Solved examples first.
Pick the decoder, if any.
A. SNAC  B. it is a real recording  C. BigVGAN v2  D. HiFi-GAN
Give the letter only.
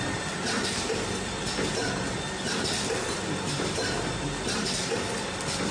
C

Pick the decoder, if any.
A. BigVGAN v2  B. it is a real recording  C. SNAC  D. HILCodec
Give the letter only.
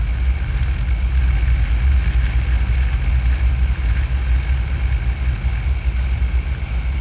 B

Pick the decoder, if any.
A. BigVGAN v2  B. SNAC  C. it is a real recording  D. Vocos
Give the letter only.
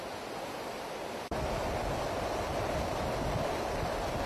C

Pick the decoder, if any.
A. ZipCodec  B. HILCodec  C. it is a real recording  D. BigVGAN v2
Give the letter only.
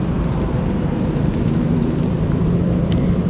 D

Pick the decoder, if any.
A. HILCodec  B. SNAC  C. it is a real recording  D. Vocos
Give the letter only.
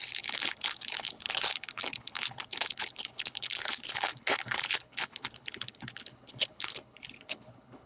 A